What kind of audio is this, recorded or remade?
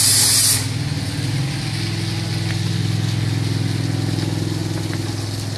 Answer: recorded